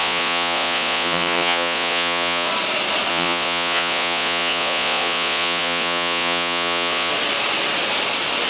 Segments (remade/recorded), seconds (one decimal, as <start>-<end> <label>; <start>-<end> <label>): 0.0-2.5 remade; 2.5-3.1 recorded; 3.1-7.1 remade; 7.1-8.5 recorded